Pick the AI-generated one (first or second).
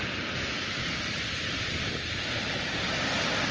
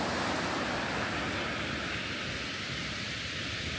first